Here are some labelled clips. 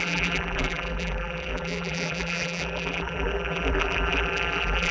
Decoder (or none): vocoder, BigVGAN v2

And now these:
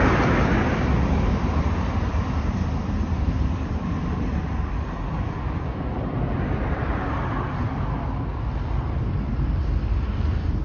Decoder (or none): vocoder, BigVGAN v2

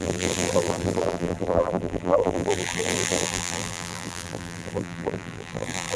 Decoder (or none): vocoder, BigVGAN v2